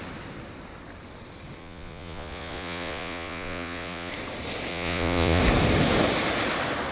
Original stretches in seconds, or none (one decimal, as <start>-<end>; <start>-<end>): 0.0-1.6; 4.1-4.7; 5.4-6.9